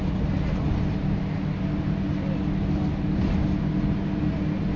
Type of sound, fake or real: real